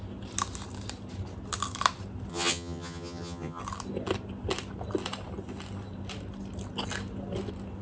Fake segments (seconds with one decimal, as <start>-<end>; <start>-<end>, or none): 2.3-3.6